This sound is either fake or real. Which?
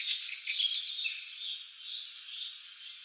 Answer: real